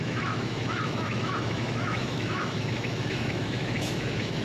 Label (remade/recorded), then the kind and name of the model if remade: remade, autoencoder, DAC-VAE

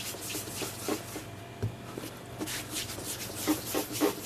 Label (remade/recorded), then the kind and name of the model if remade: recorded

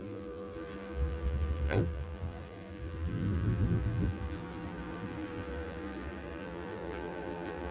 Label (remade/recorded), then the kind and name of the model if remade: remade, vocoder, BigVGAN v2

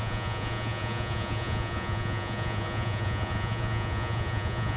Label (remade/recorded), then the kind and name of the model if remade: remade, vocoder, Vocos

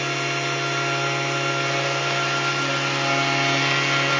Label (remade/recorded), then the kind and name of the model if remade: recorded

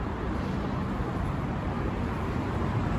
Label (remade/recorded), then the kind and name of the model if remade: remade, vocoder, BigVGAN v2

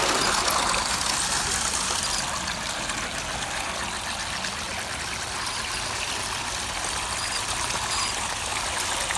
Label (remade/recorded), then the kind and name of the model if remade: recorded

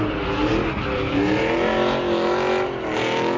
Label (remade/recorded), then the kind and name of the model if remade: recorded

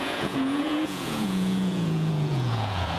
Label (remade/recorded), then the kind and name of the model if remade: remade, vocoder, Vocos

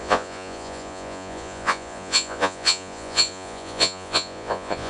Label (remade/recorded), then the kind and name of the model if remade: remade, vocoder, Vocos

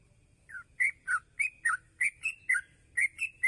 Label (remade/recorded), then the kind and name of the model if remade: recorded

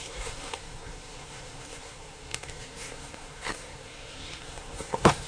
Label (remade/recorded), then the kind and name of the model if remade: remade, codec, SNAC